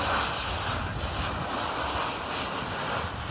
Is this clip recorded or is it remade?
recorded